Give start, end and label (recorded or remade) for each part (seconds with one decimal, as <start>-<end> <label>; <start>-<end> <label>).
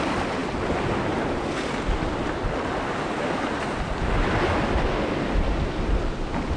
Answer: 0.0-6.6 recorded